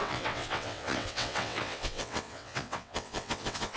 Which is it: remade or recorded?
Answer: remade